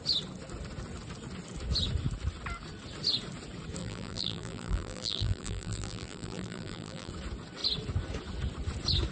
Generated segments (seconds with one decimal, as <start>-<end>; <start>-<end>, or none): 3.8-7.1